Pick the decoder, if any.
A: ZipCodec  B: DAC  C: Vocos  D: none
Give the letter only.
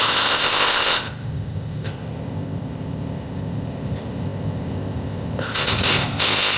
A